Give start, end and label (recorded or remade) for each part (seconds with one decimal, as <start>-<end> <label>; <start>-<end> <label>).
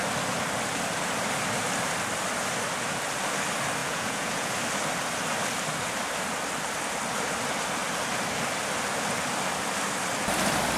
0.0-3.8 recorded; 3.8-4.5 remade; 4.5-10.8 recorded